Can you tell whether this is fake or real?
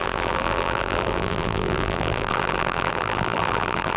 fake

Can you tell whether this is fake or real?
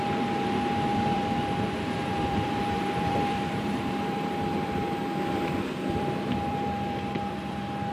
fake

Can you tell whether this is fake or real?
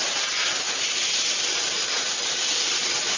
fake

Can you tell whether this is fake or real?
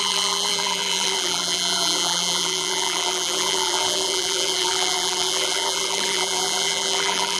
fake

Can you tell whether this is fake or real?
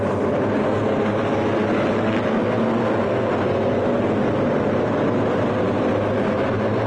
real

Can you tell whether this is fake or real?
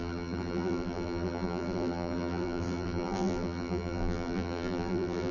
fake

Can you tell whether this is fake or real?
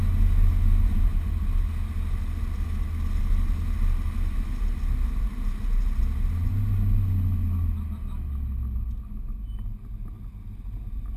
real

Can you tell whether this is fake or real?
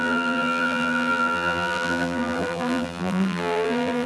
fake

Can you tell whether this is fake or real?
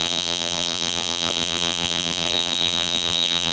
fake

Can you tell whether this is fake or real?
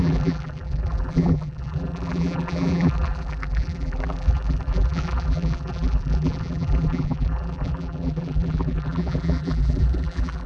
fake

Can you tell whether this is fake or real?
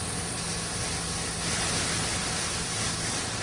real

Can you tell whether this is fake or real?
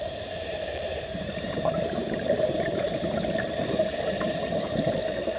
fake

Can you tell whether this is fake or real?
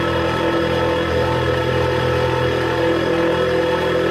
real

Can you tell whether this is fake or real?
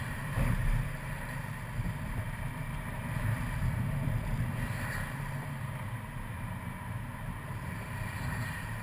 fake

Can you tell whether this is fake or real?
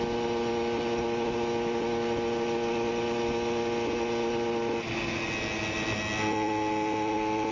real